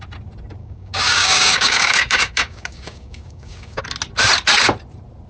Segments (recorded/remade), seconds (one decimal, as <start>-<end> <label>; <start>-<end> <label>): 0.0-0.6 recorded; 0.6-3.8 remade; 3.8-5.3 recorded